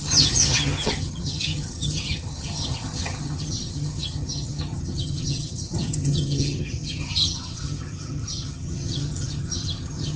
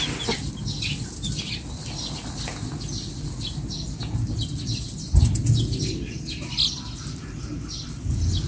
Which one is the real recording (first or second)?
second